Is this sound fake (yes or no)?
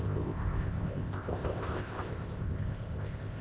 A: yes